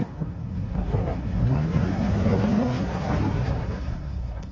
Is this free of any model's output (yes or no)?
no